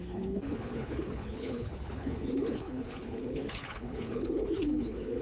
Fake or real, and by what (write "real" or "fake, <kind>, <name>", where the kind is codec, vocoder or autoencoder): fake, codec, HILCodec